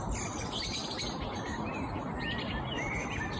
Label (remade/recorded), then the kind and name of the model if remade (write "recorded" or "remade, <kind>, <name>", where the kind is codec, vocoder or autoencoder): recorded